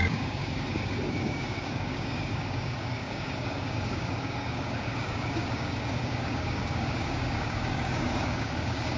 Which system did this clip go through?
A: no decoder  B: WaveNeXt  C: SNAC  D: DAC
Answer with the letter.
D